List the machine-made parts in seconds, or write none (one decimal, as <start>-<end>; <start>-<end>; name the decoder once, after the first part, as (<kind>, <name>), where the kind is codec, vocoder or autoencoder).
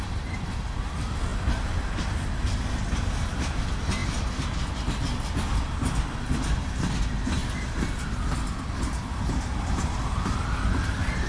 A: none